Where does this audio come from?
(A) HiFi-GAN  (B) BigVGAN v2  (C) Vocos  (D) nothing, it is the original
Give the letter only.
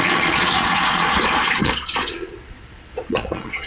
C